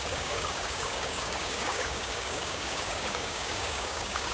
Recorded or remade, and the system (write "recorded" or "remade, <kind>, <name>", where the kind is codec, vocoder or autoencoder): remade, codec, DAC